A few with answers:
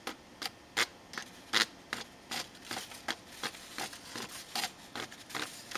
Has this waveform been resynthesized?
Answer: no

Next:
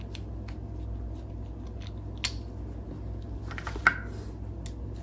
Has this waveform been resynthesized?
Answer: no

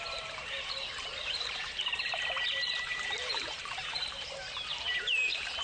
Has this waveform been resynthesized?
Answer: yes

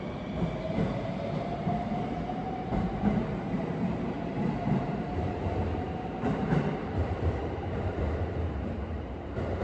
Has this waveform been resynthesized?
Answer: yes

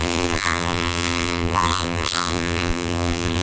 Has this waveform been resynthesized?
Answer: yes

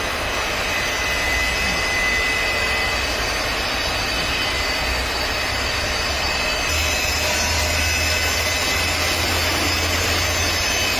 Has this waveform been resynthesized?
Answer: no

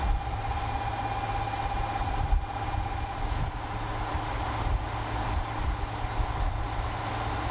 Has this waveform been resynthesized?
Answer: no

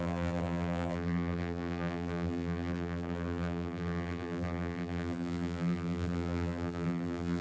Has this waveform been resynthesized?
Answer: yes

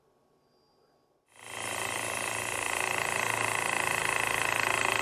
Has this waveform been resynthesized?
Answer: no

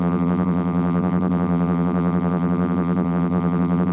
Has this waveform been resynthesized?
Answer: yes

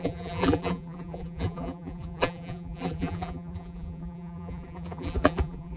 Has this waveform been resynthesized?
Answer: yes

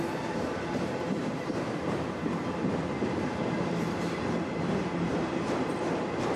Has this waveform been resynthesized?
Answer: yes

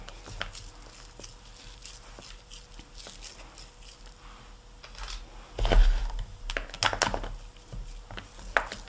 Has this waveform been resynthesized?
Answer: no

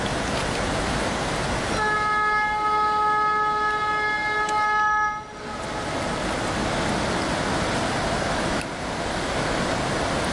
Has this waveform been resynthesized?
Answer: no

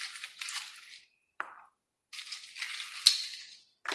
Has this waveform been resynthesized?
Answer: no